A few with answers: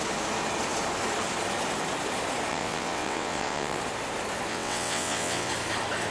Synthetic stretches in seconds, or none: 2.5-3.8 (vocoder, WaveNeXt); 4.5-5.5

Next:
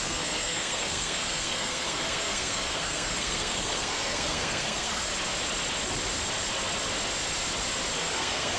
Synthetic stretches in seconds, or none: 0.0-5.1 (codec, SNAC); 8.0-8.6

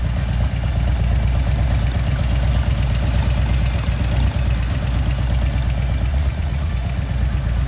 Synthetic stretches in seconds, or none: 6.1-6.7 (vocoder, Vocos)

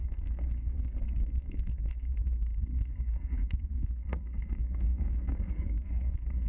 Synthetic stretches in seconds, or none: 0.0-6.5 (codec, SNAC)

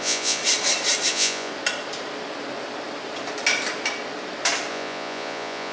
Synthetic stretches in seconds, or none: 0.0-0.4 (vocoder, Vocos); 1.1-1.5; 4.7-5.7

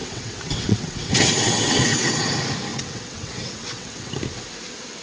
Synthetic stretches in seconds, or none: 0.0-2.3 (vocoder, WaveNeXt); 2.7-4.1